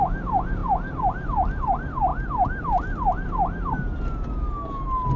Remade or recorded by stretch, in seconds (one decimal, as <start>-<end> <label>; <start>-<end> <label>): 0.0-5.2 recorded